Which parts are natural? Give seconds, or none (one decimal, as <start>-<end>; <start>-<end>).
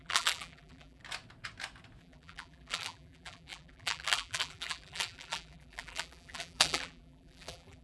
1.0-2.0